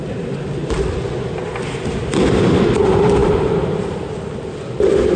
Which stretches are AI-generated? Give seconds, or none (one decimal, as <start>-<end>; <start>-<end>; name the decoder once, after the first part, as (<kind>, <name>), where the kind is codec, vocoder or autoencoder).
none